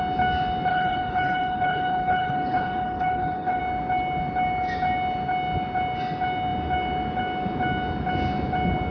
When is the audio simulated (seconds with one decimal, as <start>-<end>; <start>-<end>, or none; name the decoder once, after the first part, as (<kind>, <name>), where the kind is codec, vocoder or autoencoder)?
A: 0.7-3.6 (codec, HILCodec)